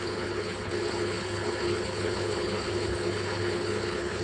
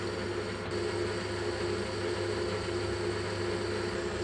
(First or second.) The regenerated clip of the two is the first